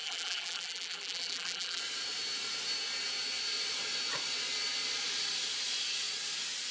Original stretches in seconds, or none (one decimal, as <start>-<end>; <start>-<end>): 1.8-6.7